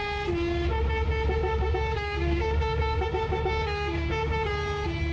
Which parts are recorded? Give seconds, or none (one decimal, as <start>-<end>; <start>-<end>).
0.0-1.4; 4.5-5.1